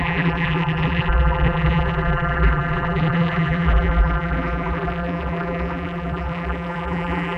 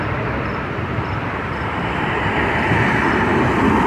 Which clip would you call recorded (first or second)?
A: second